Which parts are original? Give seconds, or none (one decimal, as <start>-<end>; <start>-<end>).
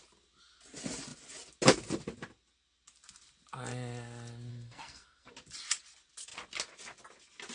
0.0-4.5; 5.3-7.5